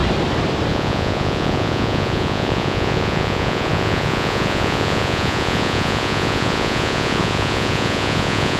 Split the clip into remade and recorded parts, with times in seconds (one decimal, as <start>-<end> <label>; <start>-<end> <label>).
0.0-0.7 recorded; 0.7-8.6 remade